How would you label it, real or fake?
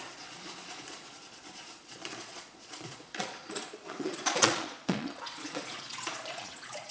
fake